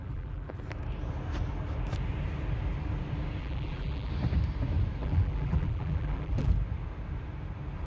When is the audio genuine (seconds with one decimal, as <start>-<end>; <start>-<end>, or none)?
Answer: 0.6-3.4; 4.1-5.0; 6.5-7.9